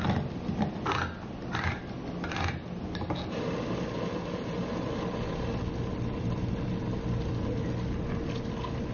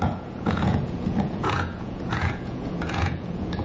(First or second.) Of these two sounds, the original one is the first